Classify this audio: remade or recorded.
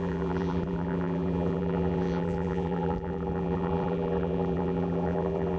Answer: remade